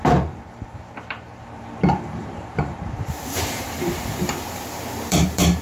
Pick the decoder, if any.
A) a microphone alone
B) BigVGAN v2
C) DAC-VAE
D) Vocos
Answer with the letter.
B